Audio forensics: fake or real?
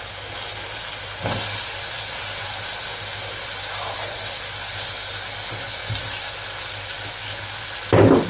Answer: real